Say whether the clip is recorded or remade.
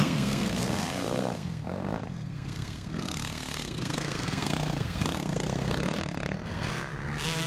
remade